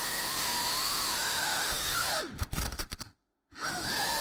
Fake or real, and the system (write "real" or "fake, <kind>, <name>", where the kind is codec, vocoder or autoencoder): fake, autoencoder, DAC-VAE